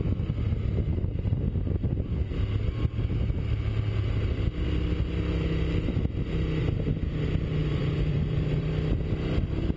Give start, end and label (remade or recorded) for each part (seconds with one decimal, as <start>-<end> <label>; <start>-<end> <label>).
0.0-0.9 recorded; 0.9-1.4 remade; 1.4-7.6 recorded; 7.6-8.7 remade; 8.7-9.8 recorded

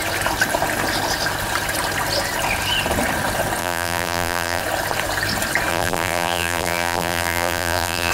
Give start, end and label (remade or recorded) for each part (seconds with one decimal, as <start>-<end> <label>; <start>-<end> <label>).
0.0-3.6 recorded; 3.6-4.6 remade; 4.6-5.7 recorded; 5.7-8.1 remade

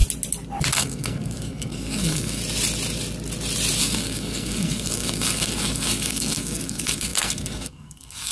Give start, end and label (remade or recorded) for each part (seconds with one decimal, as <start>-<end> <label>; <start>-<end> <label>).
0.0-0.7 recorded; 0.7-2.4 remade; 2.4-3.8 recorded; 3.8-8.3 remade

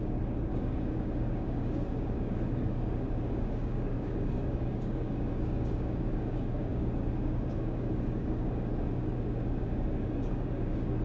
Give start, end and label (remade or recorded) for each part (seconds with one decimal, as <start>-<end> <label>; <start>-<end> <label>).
0.0-11.0 remade